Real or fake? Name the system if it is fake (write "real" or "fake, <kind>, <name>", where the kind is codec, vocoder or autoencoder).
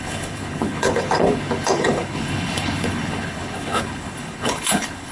fake, codec, HILCodec